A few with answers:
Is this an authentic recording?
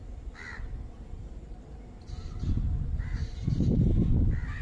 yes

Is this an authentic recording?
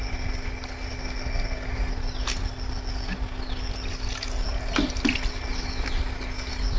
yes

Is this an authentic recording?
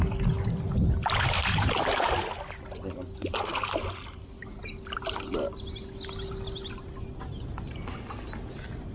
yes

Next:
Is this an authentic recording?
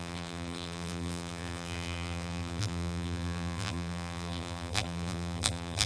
no